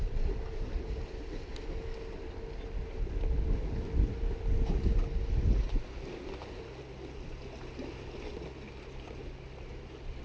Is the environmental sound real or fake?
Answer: real